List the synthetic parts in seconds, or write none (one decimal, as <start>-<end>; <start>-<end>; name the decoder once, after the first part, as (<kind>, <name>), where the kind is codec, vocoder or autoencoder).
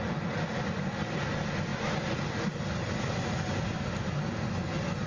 none